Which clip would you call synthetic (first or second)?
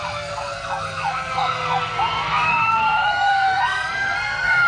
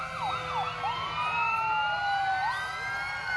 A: first